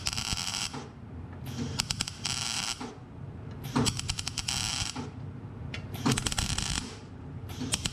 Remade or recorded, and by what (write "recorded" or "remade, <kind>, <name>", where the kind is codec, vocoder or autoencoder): remade, vocoder, BigVGAN v2